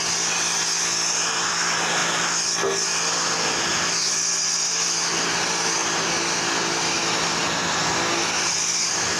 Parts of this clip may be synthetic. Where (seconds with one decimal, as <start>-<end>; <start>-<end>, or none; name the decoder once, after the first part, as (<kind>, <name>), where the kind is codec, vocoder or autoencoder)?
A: none